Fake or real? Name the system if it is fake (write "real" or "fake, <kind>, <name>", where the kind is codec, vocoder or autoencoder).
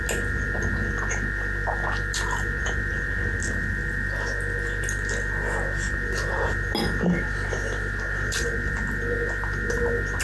real